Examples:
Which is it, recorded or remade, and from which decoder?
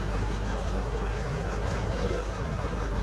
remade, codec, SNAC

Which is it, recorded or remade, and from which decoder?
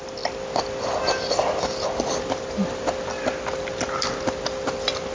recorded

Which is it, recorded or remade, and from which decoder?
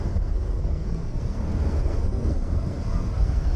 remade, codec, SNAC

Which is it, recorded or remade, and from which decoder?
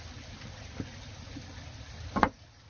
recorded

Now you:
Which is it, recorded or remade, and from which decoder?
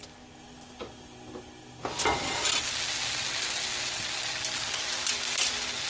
recorded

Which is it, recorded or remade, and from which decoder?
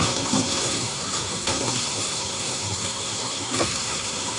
remade, codec, SNAC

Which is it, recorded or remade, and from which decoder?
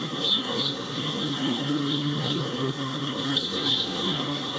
remade, codec, SNAC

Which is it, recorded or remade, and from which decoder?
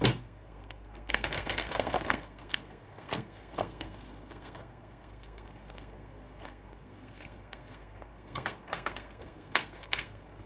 remade, codec, SNAC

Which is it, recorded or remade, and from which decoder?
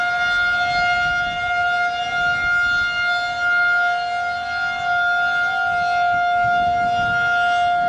recorded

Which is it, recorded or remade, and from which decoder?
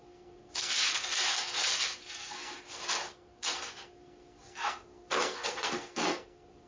remade, codec, SNAC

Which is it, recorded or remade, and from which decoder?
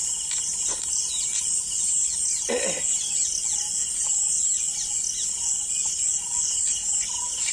recorded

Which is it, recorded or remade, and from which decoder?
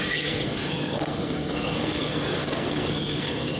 remade, codec, SNAC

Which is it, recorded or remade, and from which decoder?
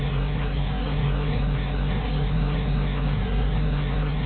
remade, codec, SNAC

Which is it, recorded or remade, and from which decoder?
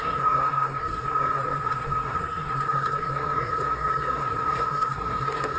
remade, codec, SNAC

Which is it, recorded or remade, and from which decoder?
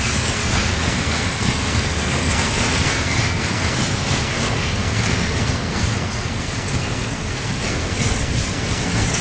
remade, codec, SNAC